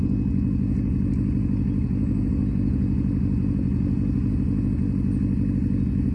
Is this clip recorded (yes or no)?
yes